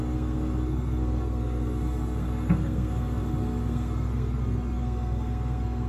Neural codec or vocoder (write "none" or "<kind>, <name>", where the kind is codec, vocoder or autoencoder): codec, SNAC